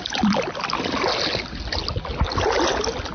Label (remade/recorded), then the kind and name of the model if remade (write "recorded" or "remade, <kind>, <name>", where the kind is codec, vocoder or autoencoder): recorded